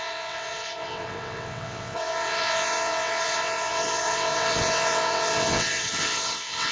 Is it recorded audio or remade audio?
remade